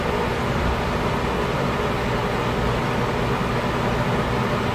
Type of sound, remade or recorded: recorded